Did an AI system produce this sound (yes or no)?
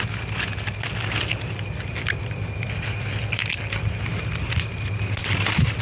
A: no